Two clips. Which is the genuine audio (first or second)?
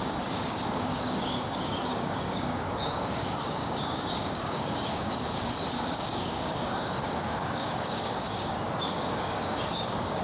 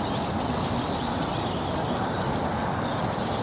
second